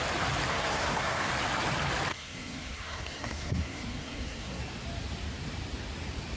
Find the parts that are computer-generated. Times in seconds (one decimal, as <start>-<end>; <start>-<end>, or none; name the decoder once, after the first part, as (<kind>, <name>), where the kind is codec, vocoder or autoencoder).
0.5-1.3 (codec, SNAC); 2.1-4.6